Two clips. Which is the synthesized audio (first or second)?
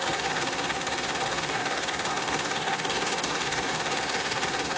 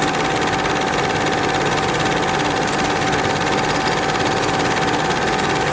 first